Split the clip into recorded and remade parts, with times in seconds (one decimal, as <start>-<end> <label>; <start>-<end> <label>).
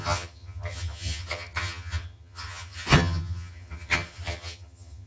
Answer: 0.0-5.1 remade